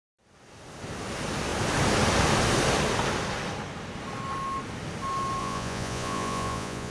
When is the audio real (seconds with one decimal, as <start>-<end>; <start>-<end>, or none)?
0.0-5.4